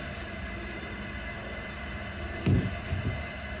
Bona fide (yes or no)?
yes